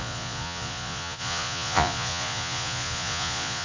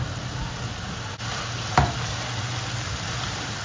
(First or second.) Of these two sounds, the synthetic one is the first